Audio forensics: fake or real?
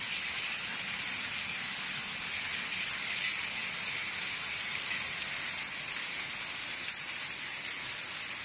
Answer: real